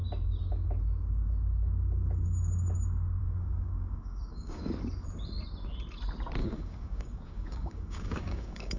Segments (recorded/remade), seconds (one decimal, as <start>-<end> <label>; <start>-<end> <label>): 0.0-3.2 recorded; 3.2-4.6 remade; 4.6-6.4 recorded; 6.4-8.8 remade